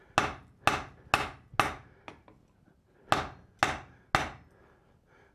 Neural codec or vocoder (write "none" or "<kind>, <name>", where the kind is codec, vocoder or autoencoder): none